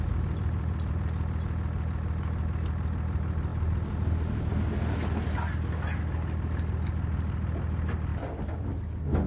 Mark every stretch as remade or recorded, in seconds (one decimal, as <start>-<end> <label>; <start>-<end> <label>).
0.0-9.3 recorded

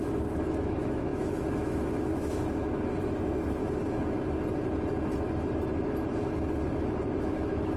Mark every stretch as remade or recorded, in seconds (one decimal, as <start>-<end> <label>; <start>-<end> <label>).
0.0-2.1 remade; 2.1-3.0 recorded; 3.0-3.6 remade; 3.6-7.2 recorded; 7.2-7.8 remade

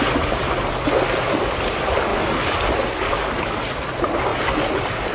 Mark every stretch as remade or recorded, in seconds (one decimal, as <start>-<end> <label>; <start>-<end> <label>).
0.0-5.1 recorded

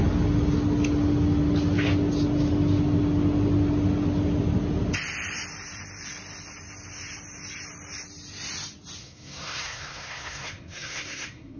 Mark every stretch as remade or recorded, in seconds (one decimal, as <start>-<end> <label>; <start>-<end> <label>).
0.0-9.0 recorded; 9.0-11.6 remade